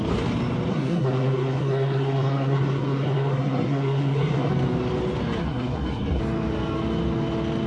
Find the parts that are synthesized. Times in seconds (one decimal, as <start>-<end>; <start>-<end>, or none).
0.7-4.5; 5.4-6.2